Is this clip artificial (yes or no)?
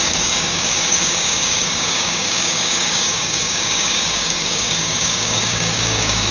yes